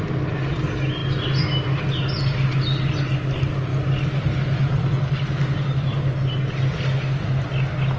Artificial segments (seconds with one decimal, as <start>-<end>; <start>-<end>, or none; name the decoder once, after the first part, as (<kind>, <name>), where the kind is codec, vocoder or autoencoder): none